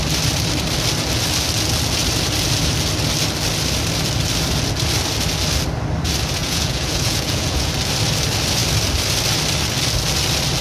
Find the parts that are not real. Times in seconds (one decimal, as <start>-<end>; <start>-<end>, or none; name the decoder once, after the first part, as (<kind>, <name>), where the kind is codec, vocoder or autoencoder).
6.4-7.7 (vocoder, Vocos)